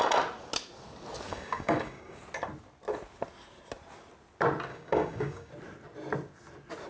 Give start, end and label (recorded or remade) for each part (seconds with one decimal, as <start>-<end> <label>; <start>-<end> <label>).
0.0-1.3 recorded; 1.3-2.2 remade; 2.2-4.7 recorded; 4.7-5.5 remade; 5.5-6.9 recorded